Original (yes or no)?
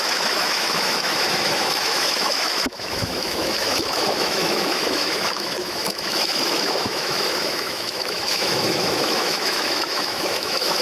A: no